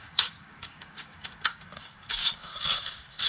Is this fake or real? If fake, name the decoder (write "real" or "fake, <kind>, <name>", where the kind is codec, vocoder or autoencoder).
fake, codec, DAC